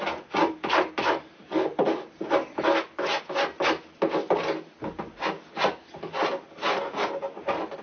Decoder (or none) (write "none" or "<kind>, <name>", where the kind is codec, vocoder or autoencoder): none